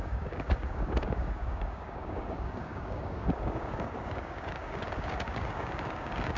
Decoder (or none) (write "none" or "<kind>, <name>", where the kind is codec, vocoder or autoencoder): codec, DAC